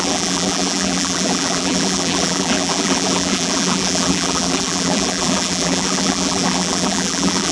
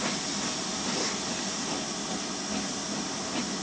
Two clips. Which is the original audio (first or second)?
second